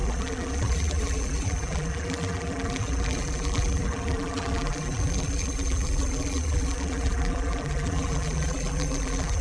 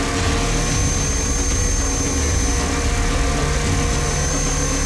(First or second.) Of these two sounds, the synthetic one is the first